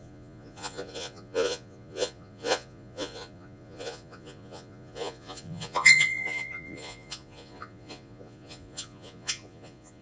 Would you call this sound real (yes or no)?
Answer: no